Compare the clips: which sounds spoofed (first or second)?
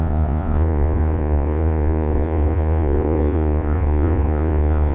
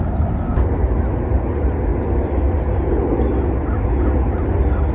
first